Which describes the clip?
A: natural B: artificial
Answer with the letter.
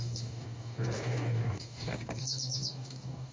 B